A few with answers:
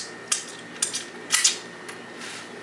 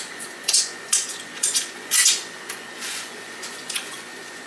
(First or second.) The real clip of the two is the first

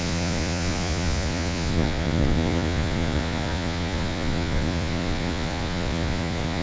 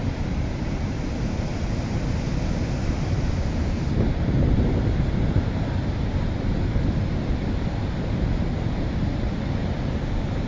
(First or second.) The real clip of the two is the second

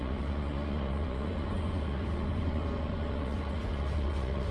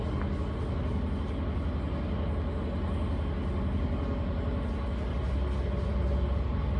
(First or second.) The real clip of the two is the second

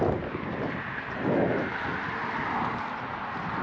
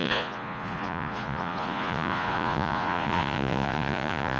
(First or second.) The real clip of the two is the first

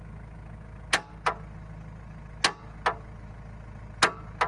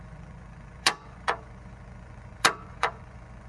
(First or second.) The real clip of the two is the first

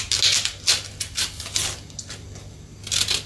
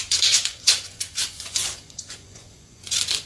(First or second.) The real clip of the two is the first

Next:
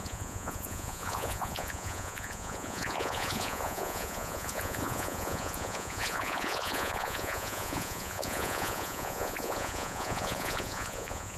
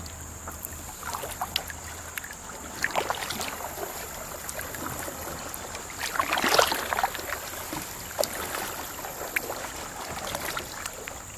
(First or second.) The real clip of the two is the second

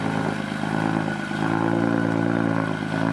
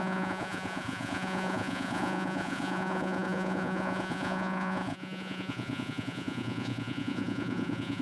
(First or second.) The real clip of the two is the first